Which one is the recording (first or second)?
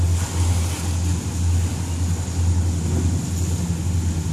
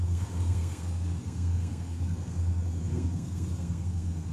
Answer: first